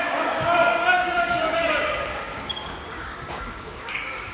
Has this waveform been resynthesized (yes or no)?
yes